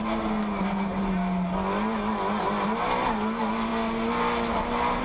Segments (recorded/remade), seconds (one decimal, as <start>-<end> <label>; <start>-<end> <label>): 0.0-5.0 recorded